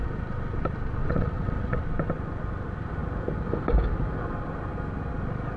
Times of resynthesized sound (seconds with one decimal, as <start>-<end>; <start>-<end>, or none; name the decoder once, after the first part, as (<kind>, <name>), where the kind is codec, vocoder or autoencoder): 1.0-1.8 (vocoder, WaveNeXt)